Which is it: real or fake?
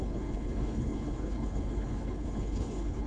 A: fake